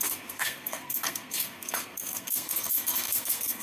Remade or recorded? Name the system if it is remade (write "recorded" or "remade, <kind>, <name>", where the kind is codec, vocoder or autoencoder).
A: remade, codec, SNAC